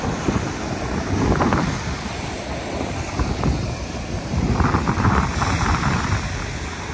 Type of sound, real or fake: real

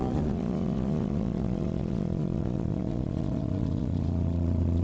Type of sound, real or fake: fake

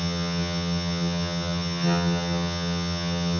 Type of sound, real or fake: fake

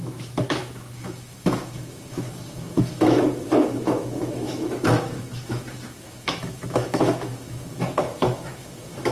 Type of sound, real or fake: fake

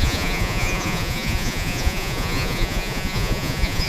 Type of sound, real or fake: fake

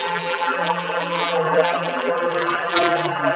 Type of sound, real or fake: fake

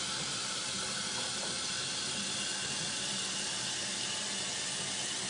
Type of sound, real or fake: real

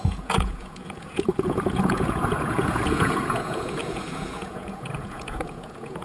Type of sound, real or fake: fake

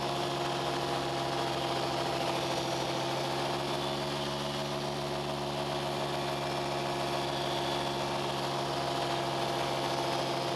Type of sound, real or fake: real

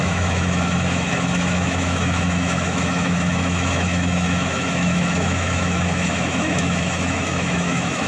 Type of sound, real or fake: fake